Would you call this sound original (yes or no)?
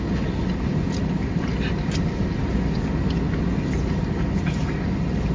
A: yes